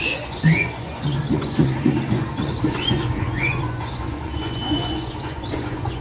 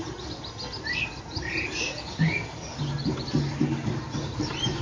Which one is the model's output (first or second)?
first